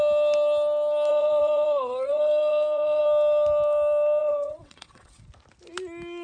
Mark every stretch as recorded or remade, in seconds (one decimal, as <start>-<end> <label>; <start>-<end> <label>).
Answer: 0.0-1.1 recorded; 1.1-3.0 remade; 3.0-4.2 recorded; 4.2-5.2 remade; 5.2-6.2 recorded